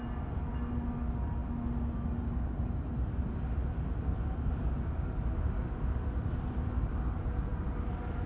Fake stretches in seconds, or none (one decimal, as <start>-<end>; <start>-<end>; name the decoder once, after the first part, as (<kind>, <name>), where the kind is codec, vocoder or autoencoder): none